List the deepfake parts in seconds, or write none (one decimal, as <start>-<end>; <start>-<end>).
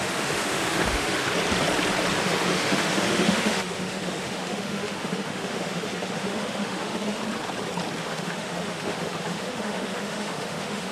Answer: 0.0-1.3; 2.2-7.2; 8.0-10.9